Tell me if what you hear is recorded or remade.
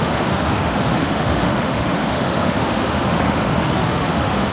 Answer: remade